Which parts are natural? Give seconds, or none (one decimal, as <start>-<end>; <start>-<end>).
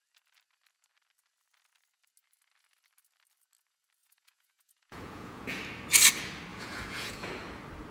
0.0-4.0; 5.6-6.5; 7.3-7.9